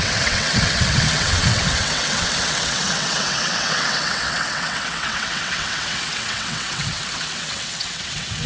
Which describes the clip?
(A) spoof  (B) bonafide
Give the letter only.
A